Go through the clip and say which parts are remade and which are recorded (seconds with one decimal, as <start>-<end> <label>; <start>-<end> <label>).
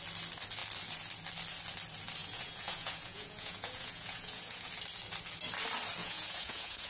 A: 0.0-2.2 recorded; 2.2-4.7 remade; 4.7-6.0 recorded; 6.0-6.9 remade